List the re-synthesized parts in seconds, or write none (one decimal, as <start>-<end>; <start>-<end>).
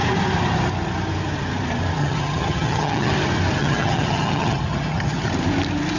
2.0-3.1; 3.6-5.3